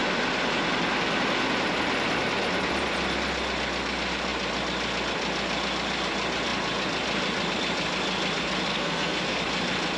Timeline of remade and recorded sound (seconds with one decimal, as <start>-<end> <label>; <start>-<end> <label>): 0.0-8.7 recorded; 8.7-9.4 remade; 9.4-10.0 recorded